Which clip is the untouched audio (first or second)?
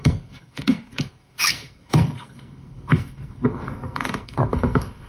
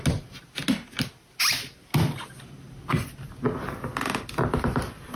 second